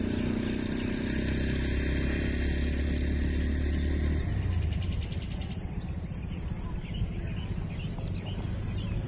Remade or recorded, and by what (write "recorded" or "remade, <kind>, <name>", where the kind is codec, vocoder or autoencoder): recorded